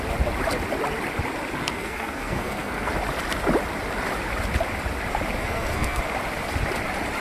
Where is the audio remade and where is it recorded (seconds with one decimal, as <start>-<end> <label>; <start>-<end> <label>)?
0.0-1.6 recorded; 1.6-2.9 remade; 2.9-5.4 recorded; 5.4-6.0 remade; 6.0-7.2 recorded